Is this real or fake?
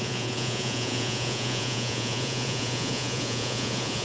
fake